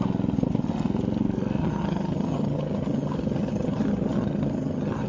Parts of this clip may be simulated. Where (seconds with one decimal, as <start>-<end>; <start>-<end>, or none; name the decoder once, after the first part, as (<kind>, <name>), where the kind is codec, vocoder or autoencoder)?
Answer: 1.6-5.1 (vocoder, HiFi-GAN)